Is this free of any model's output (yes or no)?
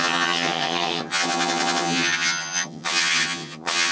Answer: no